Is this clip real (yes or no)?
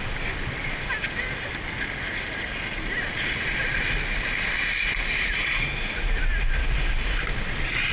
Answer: yes